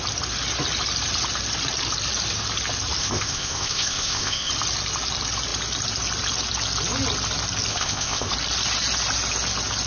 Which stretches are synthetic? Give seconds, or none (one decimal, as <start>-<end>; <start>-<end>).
3.0-4.5; 7.7-8.3